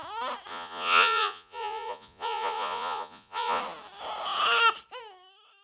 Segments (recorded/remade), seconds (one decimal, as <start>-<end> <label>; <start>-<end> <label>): 0.0-0.5 recorded; 0.5-3.6 remade; 3.6-5.6 recorded